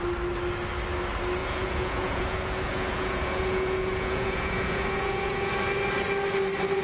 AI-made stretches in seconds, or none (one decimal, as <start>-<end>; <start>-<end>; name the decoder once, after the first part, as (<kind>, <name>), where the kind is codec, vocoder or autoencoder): 1.4-5.5 (vocoder, Vocos)